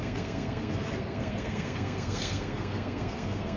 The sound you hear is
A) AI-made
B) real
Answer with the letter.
A